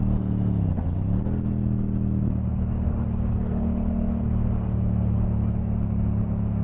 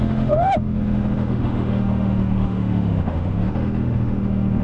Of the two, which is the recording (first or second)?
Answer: first